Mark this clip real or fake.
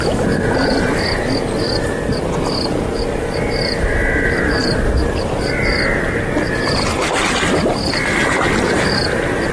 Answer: real